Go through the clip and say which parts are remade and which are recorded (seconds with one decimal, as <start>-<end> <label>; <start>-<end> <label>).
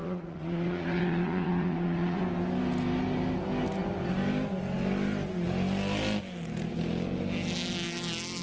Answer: 0.0-2.2 remade; 2.2-8.4 recorded